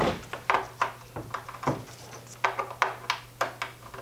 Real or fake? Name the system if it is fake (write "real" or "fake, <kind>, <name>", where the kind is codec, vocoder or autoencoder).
real